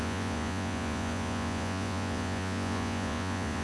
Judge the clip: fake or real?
fake